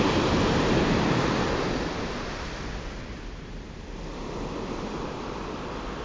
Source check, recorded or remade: recorded